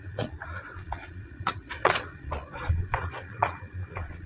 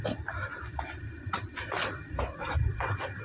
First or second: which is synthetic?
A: first